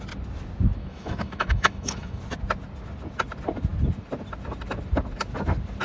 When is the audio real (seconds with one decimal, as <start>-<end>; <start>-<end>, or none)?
0.0-0.8; 2.2-5.8